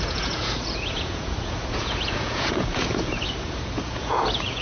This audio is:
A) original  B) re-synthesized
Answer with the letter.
B